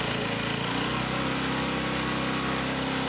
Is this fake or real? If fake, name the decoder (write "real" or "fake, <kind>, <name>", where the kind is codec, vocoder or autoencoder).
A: real